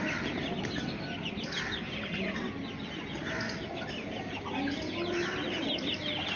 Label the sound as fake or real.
real